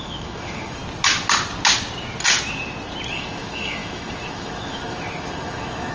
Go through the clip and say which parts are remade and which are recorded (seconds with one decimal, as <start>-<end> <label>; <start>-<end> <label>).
0.0-0.8 remade; 0.8-3.1 recorded; 3.1-5.9 remade